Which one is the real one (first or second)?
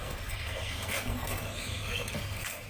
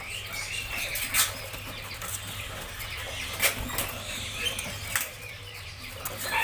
second